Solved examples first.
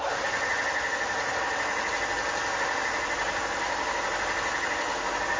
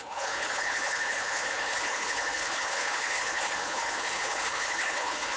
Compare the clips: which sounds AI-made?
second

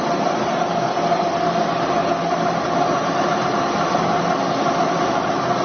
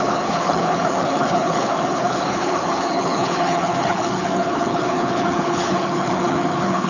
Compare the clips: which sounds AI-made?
second